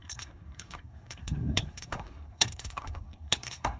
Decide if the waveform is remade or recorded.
remade